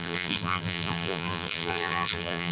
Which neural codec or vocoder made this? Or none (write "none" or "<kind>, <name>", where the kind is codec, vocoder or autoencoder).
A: vocoder, BigVGAN v2